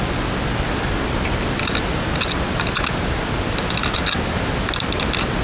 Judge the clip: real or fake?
real